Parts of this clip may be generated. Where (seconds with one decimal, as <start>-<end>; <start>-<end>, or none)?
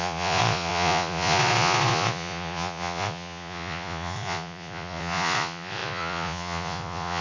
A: 0.0-7.2